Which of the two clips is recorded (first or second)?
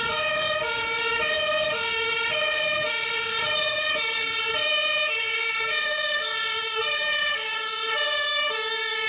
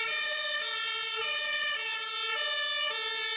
second